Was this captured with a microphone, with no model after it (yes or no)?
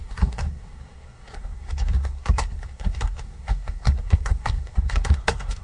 no